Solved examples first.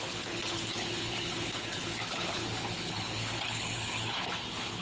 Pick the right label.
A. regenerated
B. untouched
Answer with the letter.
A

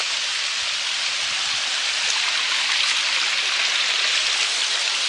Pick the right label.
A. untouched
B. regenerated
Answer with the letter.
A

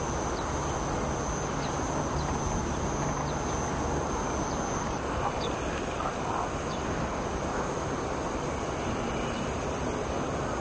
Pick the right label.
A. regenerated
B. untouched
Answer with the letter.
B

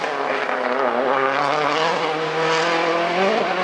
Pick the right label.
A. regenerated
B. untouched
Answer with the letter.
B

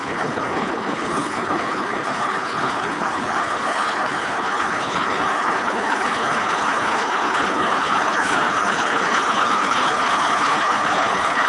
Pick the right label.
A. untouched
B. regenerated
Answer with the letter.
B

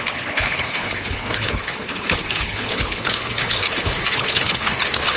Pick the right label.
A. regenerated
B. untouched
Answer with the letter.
A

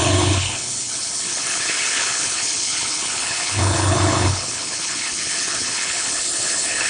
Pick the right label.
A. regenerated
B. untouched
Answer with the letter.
A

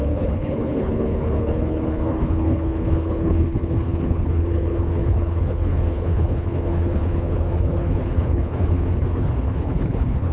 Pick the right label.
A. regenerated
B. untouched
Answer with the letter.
A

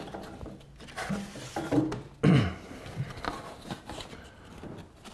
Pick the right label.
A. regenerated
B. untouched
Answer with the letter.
B